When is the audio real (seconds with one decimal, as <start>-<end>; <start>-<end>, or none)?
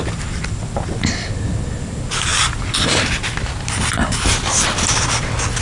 0.0-5.6